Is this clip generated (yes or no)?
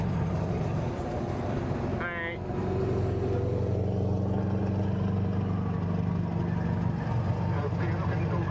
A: no